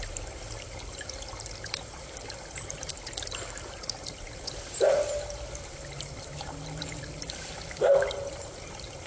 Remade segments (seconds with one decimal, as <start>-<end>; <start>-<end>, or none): none

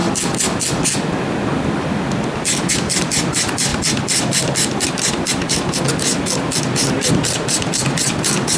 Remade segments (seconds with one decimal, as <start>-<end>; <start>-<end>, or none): none

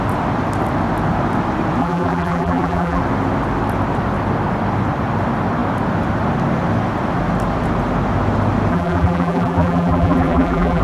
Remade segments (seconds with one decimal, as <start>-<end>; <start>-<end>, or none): 1.8-3.0; 8.7-10.8